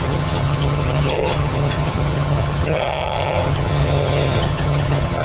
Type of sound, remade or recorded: remade